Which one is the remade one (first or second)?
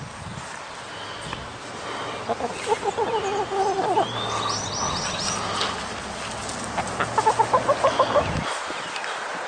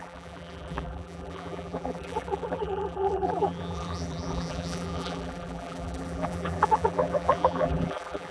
second